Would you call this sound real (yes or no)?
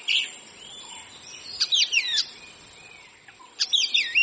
yes